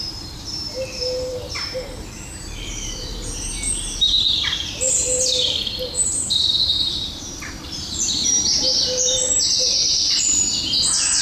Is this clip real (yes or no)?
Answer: no